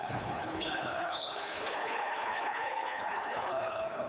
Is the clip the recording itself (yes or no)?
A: no